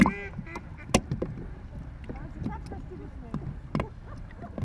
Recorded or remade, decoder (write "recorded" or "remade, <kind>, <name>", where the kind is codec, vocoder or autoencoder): recorded